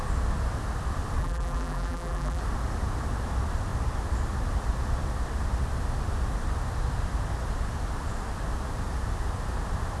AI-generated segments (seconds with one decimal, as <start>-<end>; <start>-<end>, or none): 1.2-2.4